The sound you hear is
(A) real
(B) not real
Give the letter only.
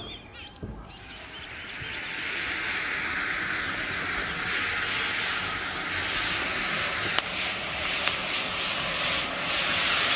A